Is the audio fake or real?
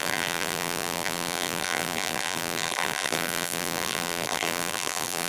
fake